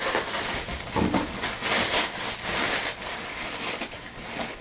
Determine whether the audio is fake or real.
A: real